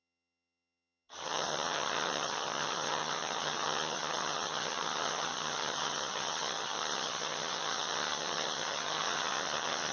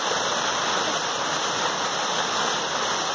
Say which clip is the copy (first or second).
first